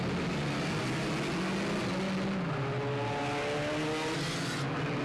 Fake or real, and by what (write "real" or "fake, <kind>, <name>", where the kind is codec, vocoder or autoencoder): real